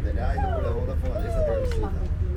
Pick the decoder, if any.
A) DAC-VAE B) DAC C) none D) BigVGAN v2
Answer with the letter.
D